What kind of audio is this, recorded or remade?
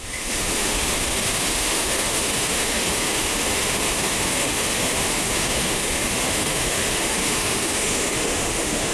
remade